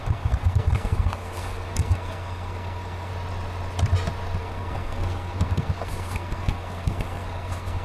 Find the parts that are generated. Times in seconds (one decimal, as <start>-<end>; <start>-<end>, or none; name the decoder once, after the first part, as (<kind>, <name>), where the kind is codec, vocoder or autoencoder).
0.0-3.1 (codec, SNAC); 4.4-7.8